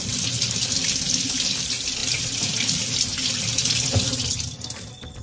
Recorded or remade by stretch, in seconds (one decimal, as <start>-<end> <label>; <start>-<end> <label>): 0.0-5.2 recorded